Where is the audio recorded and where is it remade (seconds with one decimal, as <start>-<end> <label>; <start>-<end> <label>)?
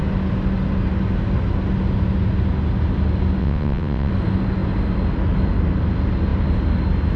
0.0-3.4 recorded; 3.4-4.1 remade; 4.1-7.2 recorded